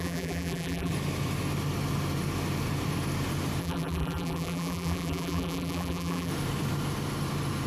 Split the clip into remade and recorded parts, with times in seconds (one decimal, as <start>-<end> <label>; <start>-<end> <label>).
0.0-0.9 remade; 0.9-3.6 recorded; 3.6-6.3 remade; 6.3-7.7 recorded